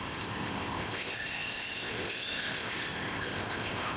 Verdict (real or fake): fake